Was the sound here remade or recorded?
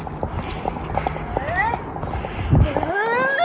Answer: recorded